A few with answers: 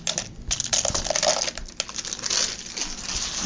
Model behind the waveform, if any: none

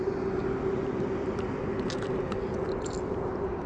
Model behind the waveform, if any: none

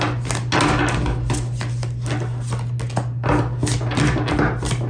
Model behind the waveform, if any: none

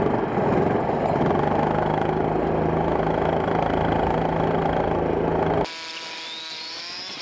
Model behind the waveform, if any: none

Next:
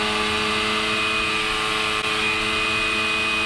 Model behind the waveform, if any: none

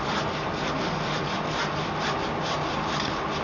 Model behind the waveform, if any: none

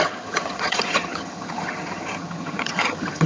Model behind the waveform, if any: vocoder, HiFi-GAN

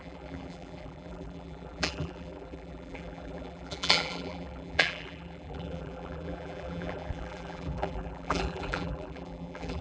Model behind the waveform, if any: vocoder, BigVGAN v2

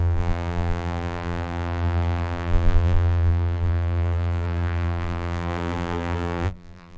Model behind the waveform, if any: vocoder, BigVGAN v2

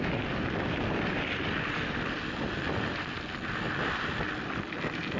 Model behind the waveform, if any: none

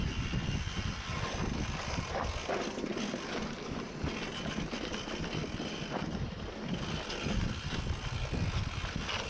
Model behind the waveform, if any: none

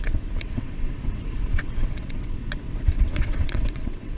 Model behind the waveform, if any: vocoder, WaveNeXt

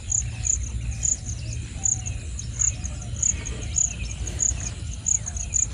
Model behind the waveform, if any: vocoder, BigVGAN v2